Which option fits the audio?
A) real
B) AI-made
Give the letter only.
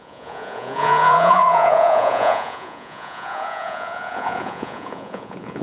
B